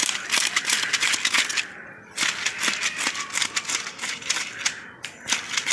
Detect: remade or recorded recorded